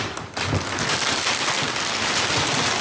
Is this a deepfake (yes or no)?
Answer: no